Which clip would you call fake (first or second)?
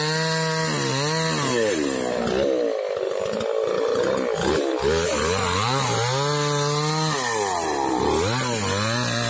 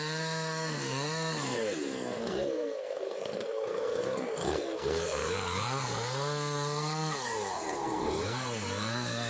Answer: second